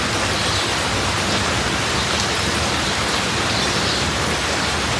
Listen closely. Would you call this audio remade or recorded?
recorded